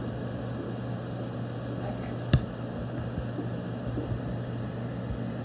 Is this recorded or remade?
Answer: recorded